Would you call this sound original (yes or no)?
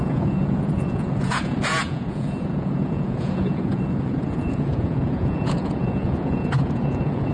no